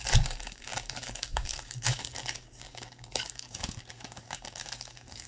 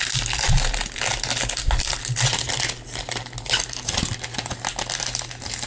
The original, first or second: second